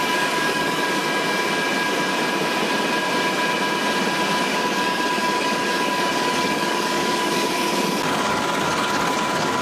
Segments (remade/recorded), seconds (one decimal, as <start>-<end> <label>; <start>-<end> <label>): 0.0-1.0 remade; 1.0-4.4 recorded; 4.4-9.6 remade